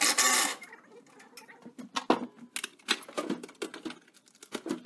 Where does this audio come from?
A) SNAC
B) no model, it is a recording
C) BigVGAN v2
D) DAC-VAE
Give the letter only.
B